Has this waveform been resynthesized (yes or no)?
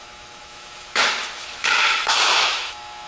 yes